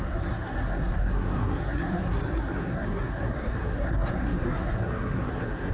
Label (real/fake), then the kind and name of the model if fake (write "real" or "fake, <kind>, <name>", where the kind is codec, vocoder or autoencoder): fake, codec, SNAC